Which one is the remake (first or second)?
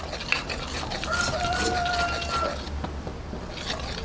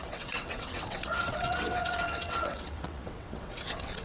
second